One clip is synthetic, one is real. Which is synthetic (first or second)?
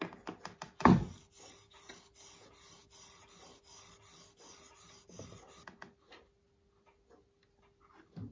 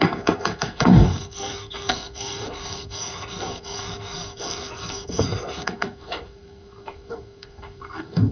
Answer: second